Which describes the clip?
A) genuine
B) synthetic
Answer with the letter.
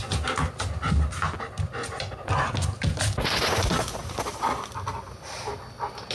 A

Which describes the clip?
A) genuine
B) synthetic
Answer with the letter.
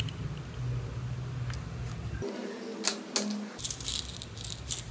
A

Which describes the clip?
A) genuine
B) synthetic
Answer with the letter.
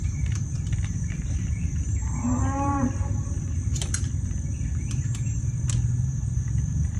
B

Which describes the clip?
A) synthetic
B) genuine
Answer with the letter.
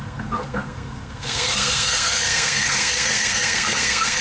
A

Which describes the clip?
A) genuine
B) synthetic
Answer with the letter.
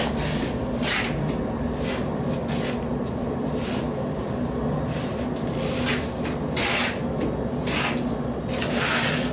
A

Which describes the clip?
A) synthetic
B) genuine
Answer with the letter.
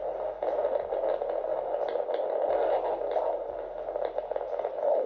B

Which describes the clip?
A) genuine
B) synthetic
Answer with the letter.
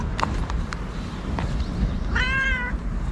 B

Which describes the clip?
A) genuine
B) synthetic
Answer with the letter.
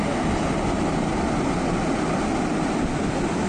A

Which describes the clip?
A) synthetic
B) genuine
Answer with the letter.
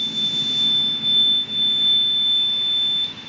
B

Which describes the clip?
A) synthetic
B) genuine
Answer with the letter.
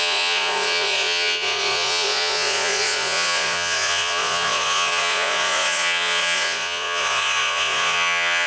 A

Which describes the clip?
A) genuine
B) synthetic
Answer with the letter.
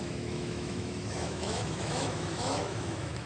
B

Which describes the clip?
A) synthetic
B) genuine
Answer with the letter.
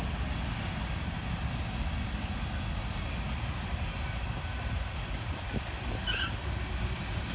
B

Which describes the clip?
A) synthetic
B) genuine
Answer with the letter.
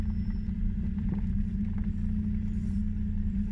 B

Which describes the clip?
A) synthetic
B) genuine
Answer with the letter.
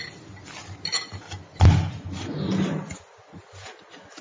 B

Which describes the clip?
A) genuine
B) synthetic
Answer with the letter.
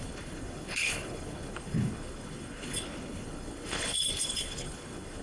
B